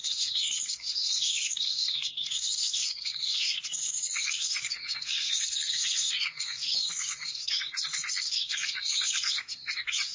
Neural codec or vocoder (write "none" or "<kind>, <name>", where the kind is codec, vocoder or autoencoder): codec, SNAC